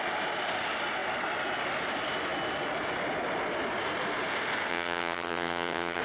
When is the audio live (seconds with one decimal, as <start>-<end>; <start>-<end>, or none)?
0.0-4.7